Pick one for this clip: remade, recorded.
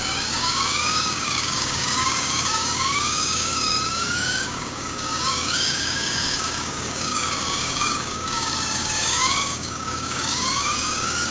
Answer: remade